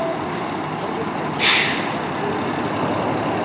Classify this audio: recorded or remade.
recorded